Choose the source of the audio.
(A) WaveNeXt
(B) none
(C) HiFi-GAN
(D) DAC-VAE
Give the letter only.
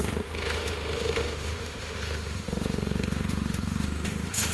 D